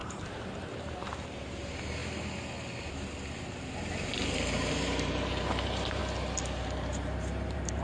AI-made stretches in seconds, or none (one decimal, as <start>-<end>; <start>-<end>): 0.0-2.0; 4.5-6.0; 6.6-7.8